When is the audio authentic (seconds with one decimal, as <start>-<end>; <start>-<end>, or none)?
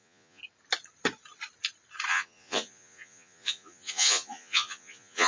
0.4-2.1